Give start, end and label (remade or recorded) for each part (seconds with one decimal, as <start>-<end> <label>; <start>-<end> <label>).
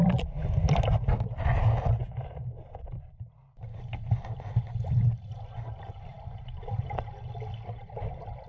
0.0-8.5 recorded